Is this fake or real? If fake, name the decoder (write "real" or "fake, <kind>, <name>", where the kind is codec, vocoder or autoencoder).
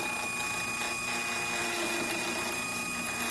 real